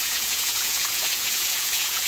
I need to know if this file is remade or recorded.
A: remade